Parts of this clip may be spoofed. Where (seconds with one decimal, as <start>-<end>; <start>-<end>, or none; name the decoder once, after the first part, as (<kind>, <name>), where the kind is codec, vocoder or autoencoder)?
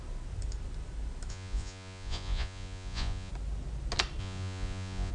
1.3-3.3 (vocoder, Vocos); 4.2-5.1